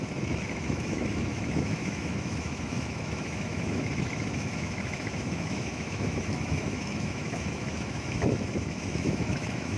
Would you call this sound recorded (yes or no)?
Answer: no